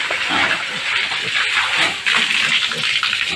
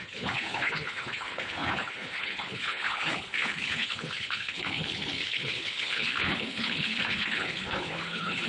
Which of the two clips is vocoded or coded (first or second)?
second